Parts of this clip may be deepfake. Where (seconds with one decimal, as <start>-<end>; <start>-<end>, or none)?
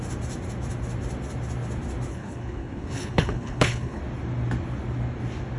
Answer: 2.1-4.0